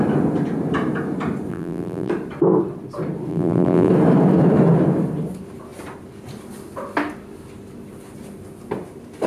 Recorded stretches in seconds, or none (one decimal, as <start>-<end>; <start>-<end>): 0.0-1.5; 2.1-3.3; 3.9-9.3